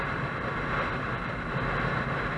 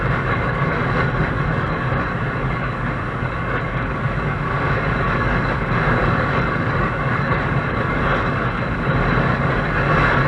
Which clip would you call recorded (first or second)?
first